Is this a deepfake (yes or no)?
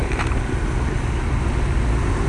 no